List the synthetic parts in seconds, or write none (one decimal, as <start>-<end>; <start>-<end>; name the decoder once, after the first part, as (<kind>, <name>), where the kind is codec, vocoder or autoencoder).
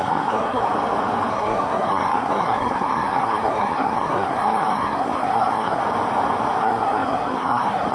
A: 0.0-0.6 (codec, SNAC); 1.3-5.8; 6.6-7.9